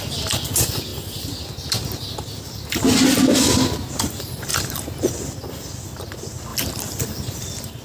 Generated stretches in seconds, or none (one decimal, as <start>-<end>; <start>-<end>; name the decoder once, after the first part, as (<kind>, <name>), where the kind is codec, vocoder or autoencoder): 0.0-0.9 (vocoder, BigVGAN v2); 4.0-4.5; 6.1-7.8